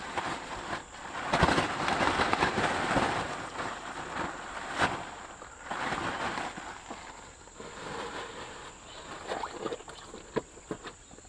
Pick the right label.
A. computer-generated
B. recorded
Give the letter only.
B